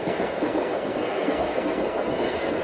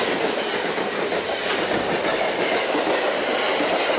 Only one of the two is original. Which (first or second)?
second